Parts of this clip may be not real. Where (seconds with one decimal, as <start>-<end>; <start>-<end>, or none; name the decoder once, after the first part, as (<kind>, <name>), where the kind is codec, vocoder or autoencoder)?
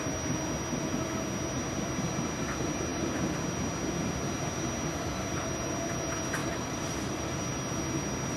6.4-7.4 (vocoder, BigVGAN v2)